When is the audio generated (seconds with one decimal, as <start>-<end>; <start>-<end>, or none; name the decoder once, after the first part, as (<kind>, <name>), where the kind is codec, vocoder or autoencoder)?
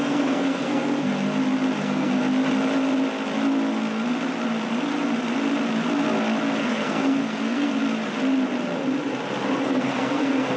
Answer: 0.0-1.1 (codec, SNAC); 1.8-2.2; 6.6-7.7; 9.6-10.6